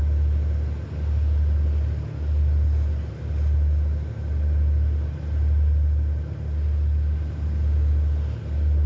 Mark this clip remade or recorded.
recorded